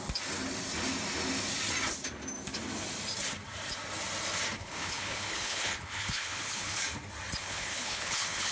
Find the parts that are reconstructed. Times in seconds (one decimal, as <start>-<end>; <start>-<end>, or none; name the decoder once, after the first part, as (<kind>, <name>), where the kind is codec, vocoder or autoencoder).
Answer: 4.6-6.8 (codec, HILCodec); 7.4-8.5